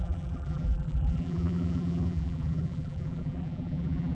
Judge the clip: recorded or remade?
remade